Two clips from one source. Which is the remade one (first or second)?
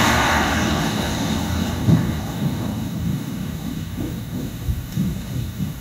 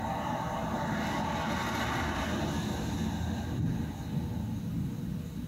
first